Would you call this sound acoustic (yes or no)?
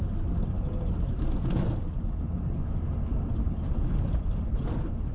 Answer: yes